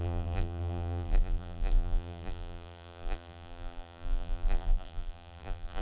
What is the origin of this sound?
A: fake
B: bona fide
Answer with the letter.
A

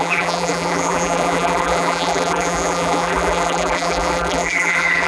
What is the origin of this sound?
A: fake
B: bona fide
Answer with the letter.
A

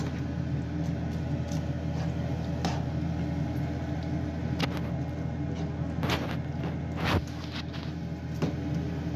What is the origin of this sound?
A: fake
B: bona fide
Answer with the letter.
B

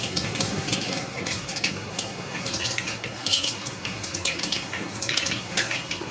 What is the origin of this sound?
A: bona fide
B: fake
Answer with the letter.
B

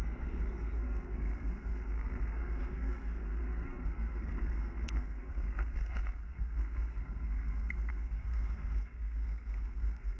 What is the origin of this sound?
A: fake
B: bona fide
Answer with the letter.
A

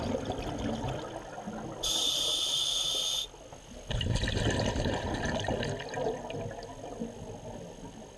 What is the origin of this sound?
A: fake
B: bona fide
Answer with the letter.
B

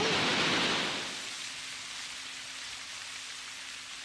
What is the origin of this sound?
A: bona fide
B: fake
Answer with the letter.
A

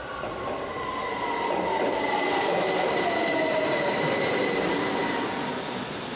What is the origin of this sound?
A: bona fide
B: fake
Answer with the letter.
A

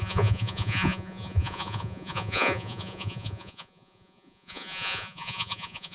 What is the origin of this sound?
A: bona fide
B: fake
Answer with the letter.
B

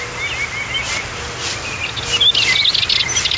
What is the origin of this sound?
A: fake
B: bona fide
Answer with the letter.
B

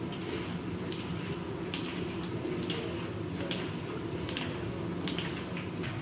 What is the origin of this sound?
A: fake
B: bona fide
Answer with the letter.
B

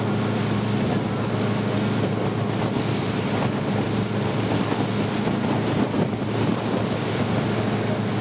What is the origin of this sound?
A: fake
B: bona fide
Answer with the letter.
B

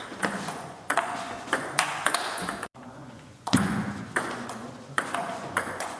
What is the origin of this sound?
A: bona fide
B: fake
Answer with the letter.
B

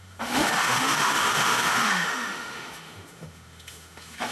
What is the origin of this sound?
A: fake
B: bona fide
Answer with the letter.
A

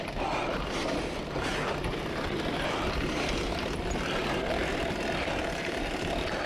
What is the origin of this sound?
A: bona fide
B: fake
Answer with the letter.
A